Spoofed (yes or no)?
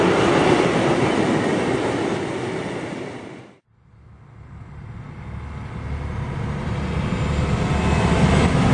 no